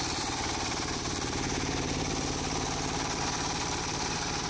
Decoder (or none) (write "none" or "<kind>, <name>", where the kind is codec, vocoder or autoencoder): vocoder, BigVGAN v2